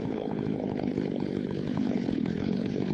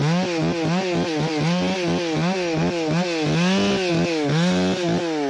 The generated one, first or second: first